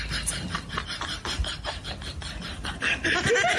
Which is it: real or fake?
real